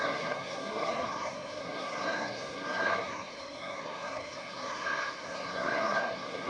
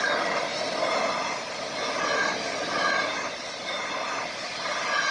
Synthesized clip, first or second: first